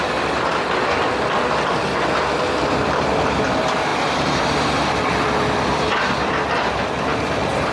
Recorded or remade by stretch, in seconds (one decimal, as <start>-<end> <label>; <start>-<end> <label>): 0.0-7.7 recorded